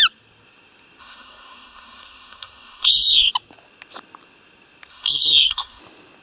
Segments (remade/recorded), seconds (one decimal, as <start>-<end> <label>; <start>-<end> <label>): 0.0-1.0 recorded; 1.0-3.3 remade; 3.3-4.9 recorded; 4.9-5.8 remade; 5.8-6.2 recorded